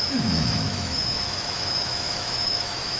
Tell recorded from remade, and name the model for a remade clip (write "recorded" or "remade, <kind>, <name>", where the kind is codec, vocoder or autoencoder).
remade, autoencoder, DAC-VAE